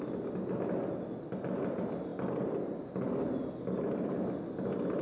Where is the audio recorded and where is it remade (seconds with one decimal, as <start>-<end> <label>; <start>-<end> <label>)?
0.0-5.0 recorded